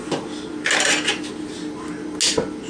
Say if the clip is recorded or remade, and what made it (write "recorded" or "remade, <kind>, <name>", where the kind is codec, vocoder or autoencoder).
recorded